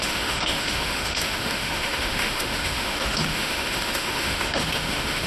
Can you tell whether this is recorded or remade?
remade